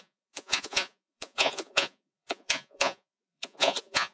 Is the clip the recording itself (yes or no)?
no